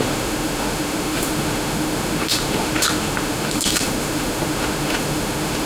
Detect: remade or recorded remade